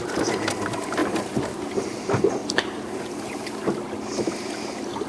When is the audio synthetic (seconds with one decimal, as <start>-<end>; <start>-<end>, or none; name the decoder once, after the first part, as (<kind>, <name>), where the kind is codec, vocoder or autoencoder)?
none